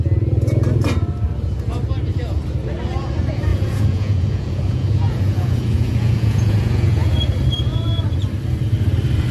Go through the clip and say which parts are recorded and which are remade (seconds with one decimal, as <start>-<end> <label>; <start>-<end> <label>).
0.0-3.5 recorded; 3.5-7.1 remade; 7.1-9.3 recorded